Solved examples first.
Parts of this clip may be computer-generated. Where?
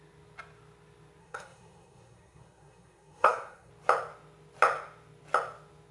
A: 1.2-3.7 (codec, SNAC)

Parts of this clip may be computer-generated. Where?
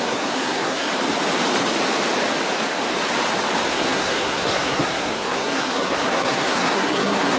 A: 0.0-0.9 (codec, SNAC); 3.7-7.4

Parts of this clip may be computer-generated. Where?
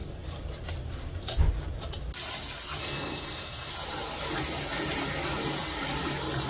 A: 2.8-3.7 (codec, SNAC)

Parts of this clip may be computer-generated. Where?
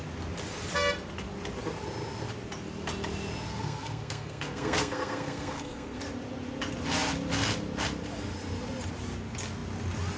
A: 3.5-6.0 (codec, SNAC)